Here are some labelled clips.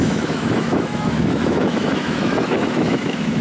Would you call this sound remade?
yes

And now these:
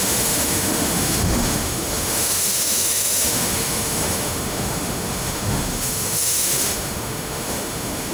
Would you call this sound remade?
yes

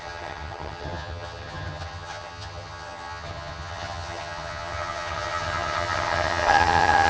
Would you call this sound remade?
yes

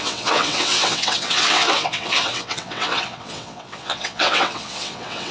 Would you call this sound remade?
yes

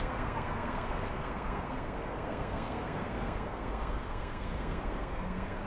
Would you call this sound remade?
yes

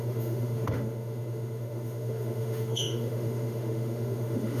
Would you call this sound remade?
yes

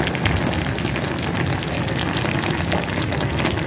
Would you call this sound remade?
no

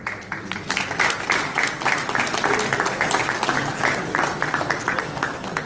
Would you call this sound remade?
no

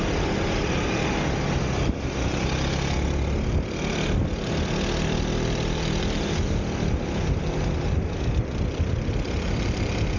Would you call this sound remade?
no